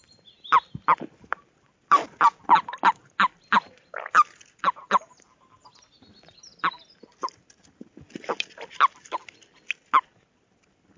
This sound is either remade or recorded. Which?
recorded